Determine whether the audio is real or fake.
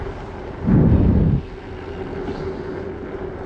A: real